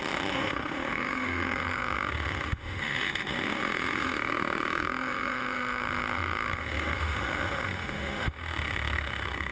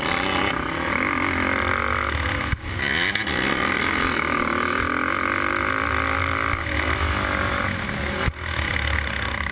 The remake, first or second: first